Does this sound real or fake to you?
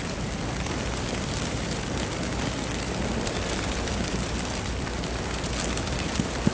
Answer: fake